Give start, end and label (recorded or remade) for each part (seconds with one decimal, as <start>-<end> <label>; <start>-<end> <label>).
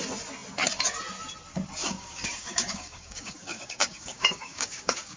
0.0-1.8 recorded; 1.8-5.2 remade